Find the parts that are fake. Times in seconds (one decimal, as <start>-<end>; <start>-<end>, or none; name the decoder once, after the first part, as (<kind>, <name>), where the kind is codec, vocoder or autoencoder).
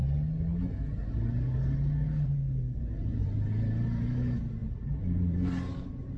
3.0-6.2 (vocoder, BigVGAN v2)